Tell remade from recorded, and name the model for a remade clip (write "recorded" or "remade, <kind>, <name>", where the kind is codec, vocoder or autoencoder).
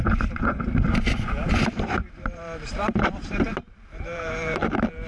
remade, vocoder, BigVGAN v2